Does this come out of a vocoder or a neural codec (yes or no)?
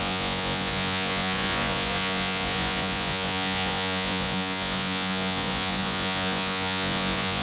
yes